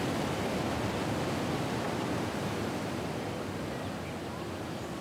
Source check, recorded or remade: recorded